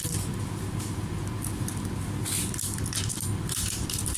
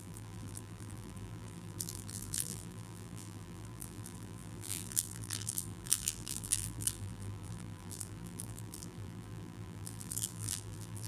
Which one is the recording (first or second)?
first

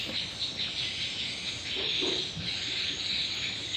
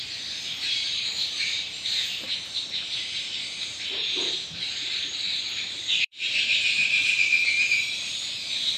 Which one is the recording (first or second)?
first